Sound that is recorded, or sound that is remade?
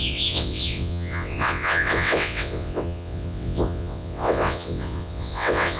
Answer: remade